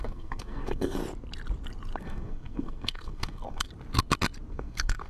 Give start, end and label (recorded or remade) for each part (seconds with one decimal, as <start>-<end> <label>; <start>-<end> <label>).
0.0-1.0 remade; 1.0-2.0 recorded; 2.0-3.7 remade; 3.7-4.5 recorded; 4.5-5.1 remade